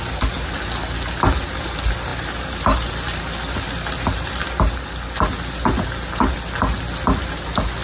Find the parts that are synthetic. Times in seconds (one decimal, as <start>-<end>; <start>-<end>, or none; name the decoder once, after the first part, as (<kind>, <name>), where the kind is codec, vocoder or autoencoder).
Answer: none